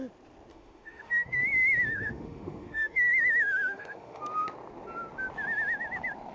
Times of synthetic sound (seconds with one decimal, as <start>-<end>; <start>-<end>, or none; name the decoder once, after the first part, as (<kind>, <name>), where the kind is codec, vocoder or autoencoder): 0.5-1.4 (autoencoder, DAC-VAE); 1.9-4.2